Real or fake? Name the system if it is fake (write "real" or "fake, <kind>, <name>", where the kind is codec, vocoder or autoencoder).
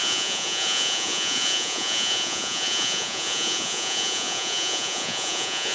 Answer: fake, vocoder, Vocos